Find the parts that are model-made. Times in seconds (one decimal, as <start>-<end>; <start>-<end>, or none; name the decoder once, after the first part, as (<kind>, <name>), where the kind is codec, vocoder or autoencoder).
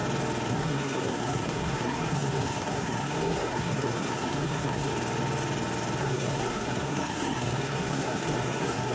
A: 0.5-4.9 (codec, SNAC); 6.0-8.9